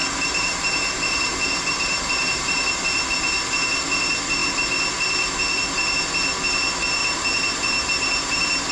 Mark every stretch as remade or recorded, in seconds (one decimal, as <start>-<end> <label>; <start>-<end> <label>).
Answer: 0.0-2.7 remade; 2.7-7.0 recorded; 7.0-8.7 remade